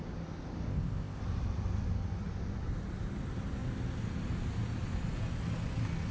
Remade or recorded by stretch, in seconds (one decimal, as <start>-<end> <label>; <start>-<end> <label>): 0.0-0.7 recorded; 0.7-1.2 remade; 1.2-6.1 recorded